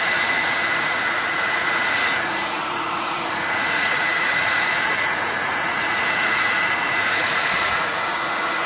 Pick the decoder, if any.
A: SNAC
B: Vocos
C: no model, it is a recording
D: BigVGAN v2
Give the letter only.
B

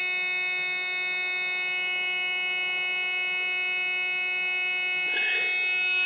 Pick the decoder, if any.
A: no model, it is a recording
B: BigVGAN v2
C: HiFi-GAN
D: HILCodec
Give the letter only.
A